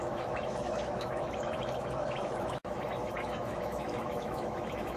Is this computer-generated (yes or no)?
yes